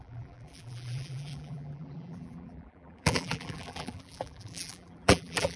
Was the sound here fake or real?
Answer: fake